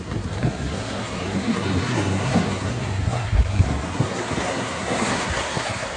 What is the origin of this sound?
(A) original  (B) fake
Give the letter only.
B